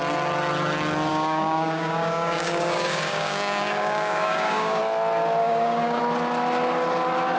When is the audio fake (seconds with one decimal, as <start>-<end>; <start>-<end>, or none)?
1.1-4.8; 5.4-6.0